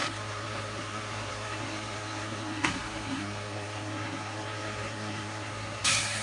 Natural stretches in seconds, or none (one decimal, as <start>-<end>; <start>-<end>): none